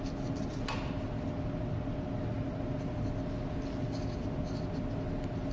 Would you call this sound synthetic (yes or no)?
no